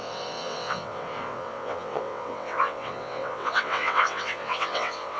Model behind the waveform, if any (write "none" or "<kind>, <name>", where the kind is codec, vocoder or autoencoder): vocoder, WaveNeXt